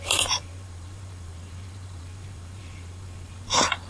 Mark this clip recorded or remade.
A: remade